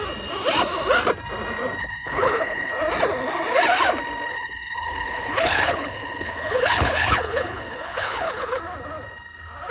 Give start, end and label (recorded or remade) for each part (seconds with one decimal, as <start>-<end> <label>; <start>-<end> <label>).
0.0-1.8 recorded; 1.8-2.7 remade; 2.7-4.3 recorded; 4.3-8.6 remade; 8.6-9.7 recorded